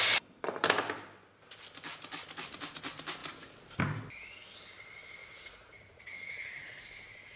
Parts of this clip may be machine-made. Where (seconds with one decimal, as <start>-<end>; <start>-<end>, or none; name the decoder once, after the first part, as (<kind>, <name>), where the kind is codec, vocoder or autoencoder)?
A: 5.2-6.8 (vocoder, Vocos)